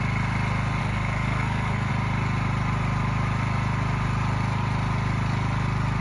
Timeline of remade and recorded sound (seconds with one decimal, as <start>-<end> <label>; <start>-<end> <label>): 0.0-0.8 recorded; 0.8-1.9 remade; 1.9-6.0 recorded